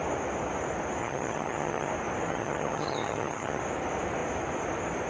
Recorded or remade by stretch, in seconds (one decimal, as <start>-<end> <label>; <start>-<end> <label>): 0.0-1.0 recorded; 1.0-1.9 remade; 1.9-2.3 recorded; 2.3-3.6 remade; 3.6-5.1 recorded